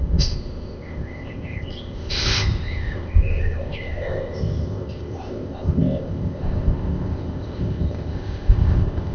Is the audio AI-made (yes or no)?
yes